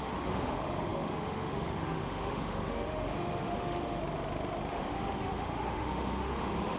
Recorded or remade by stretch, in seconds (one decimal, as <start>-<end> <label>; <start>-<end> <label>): 0.0-4.0 remade; 4.0-4.7 recorded; 4.7-6.8 remade